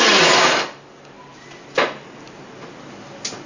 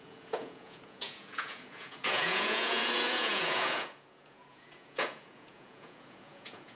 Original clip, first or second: first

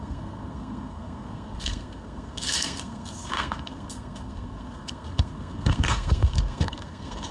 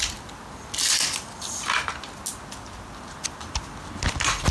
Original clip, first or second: second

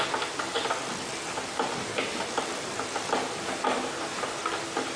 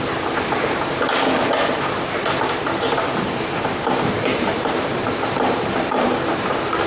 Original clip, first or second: first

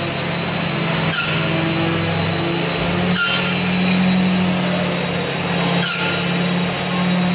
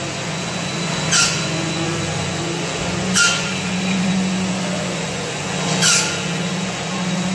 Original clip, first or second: first